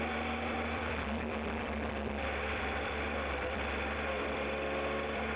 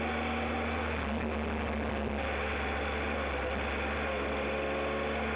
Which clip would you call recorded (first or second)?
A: second